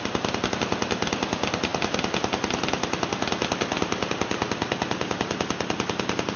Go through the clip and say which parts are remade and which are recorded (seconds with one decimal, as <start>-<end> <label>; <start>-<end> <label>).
0.0-6.4 recorded